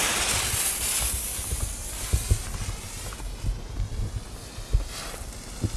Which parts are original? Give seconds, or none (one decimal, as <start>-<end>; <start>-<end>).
0.0-5.8